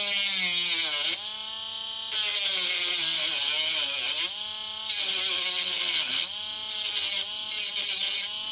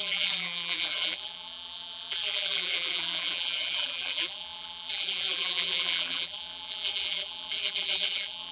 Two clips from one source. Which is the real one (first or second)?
first